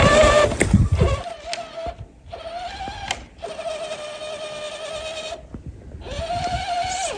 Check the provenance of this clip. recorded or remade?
recorded